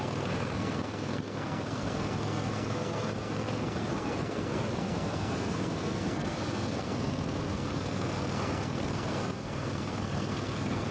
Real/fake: fake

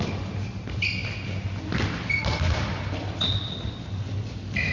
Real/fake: real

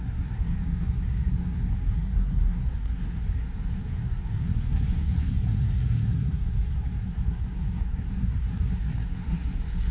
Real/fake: fake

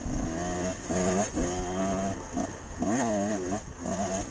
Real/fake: real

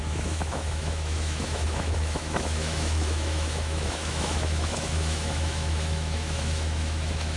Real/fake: fake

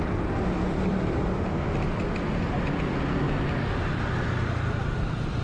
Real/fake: real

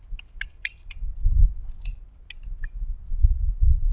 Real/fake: real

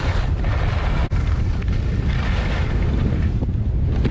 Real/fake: real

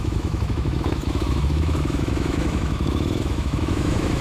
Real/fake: fake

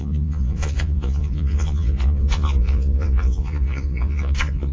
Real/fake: fake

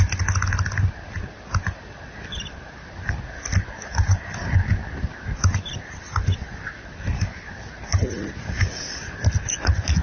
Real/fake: real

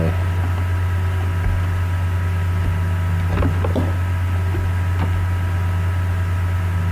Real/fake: real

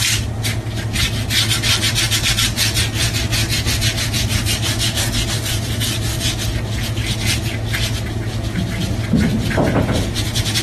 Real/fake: real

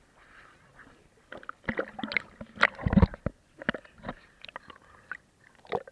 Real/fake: real